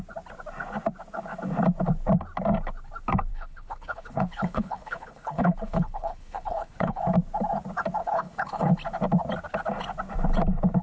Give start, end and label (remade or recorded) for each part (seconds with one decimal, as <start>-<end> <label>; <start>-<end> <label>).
0.0-3.3 recorded; 3.3-7.0 remade; 7.0-8.0 recorded; 8.0-8.7 remade; 8.7-10.8 recorded